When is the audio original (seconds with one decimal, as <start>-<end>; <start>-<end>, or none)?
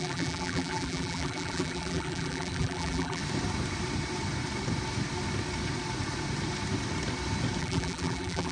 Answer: 3.2-7.6